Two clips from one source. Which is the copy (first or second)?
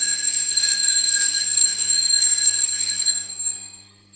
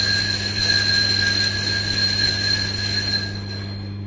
first